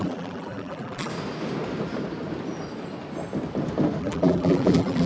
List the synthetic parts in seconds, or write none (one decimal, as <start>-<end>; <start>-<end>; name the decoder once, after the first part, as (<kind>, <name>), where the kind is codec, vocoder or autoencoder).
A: 0.0-1.1 (vocoder, BigVGAN v2); 4.0-5.1